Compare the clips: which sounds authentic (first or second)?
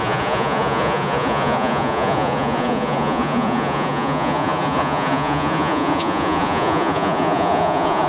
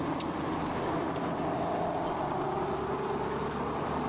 second